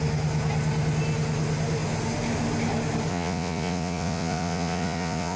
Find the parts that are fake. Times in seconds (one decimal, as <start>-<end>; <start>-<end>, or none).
3.1-5.4